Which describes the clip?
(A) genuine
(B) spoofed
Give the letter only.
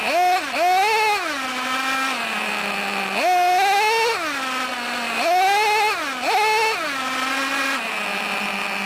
A